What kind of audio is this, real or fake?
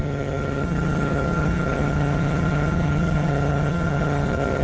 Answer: fake